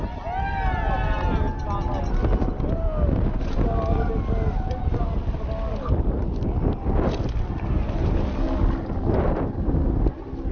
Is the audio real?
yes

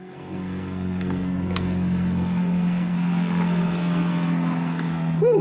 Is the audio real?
no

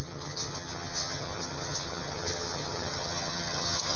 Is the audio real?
no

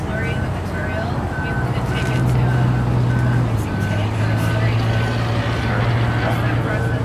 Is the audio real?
yes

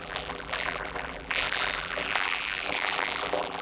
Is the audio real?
no